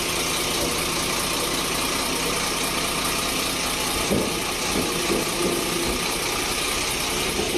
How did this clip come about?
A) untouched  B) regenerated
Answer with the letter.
A